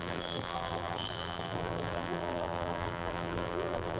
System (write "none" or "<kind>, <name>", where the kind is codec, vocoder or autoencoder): vocoder, BigVGAN v2